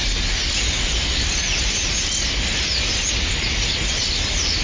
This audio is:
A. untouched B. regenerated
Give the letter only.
A